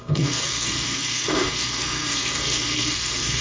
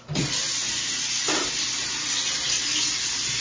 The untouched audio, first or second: second